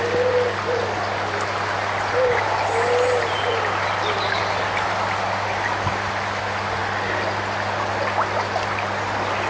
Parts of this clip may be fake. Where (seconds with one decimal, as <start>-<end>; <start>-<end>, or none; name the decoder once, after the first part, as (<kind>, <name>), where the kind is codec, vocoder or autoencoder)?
none